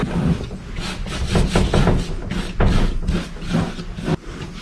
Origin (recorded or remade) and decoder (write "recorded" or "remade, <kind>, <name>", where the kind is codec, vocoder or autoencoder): recorded